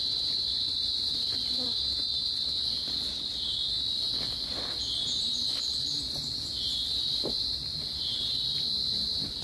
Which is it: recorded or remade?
recorded